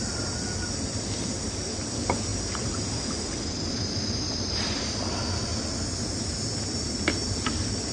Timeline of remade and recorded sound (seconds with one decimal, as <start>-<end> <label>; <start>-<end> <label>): 0.0-7.9 recorded